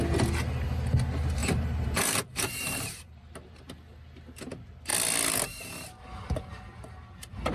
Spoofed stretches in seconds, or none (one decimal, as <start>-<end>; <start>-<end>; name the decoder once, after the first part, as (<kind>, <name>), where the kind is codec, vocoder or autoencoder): 1.4-3.5 (vocoder, BigVGAN v2)